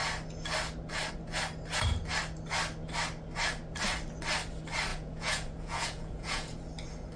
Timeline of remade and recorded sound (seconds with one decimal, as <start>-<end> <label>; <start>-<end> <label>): 0.0-4.9 recorded; 4.9-6.6 remade; 6.6-7.2 recorded